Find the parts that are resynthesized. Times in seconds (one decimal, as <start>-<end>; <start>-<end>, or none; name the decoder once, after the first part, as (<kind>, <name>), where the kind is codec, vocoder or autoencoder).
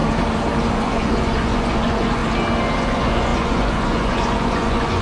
0.7-2.2 (vocoder, Vocos); 2.8-5.0